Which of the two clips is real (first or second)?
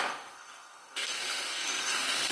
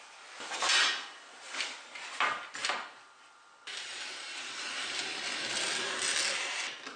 second